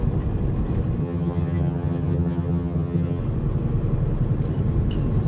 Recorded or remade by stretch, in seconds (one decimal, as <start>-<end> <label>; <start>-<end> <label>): 0.0-1.0 recorded; 1.0-3.2 remade; 3.2-5.3 recorded